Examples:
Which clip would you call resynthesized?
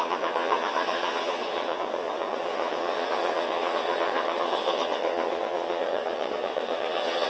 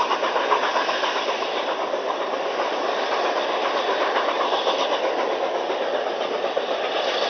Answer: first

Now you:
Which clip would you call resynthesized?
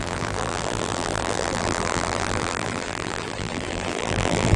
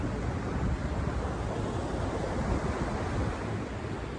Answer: first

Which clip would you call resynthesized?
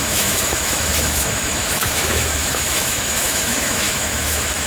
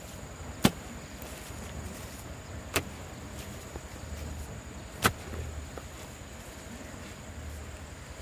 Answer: first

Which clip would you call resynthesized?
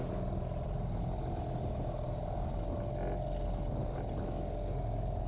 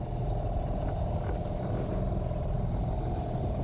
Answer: second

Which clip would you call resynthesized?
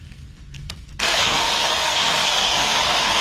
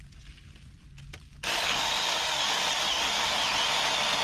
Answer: first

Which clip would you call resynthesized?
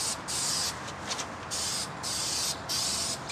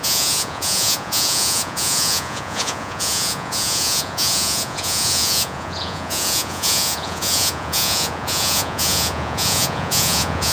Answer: second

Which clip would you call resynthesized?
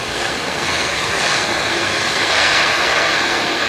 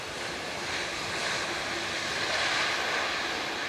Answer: first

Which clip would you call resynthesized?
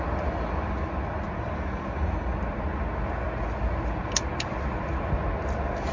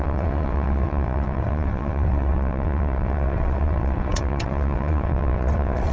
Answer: second